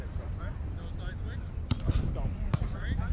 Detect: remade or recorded recorded